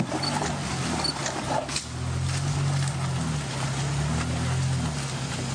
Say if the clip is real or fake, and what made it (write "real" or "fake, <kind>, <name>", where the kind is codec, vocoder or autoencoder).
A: real